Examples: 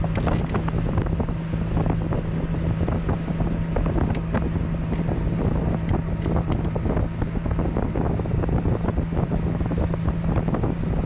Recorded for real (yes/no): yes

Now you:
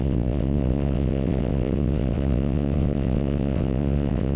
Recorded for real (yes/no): no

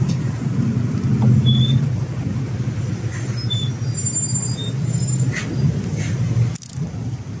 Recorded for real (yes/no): yes